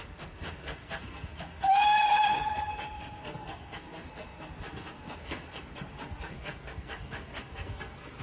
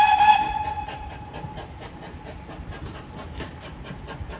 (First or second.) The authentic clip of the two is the second